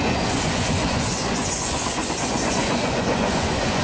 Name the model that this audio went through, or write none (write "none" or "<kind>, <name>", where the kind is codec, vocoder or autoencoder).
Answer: vocoder, Vocos